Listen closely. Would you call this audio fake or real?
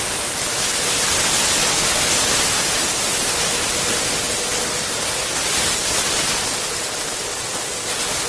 real